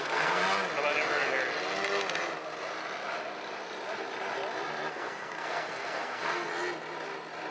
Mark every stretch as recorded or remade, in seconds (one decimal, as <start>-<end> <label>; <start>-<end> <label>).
0.0-0.4 remade; 0.4-4.9 recorded; 4.9-6.5 remade; 6.5-7.5 recorded